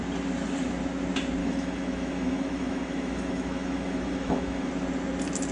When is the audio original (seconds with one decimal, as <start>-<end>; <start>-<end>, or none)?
0.0-1.4; 4.7-5.5